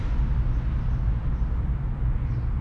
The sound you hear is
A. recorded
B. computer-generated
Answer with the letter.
A